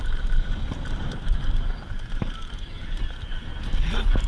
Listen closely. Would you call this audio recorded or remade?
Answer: remade